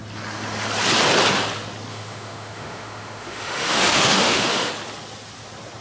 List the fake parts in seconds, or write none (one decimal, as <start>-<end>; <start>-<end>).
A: 1.9-4.7